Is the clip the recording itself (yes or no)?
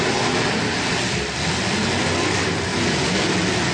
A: yes